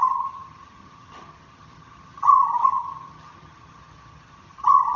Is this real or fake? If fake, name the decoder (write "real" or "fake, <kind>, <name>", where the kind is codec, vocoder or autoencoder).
fake, vocoder, HiFi-GAN